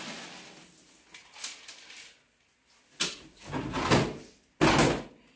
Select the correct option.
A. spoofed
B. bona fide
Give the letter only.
B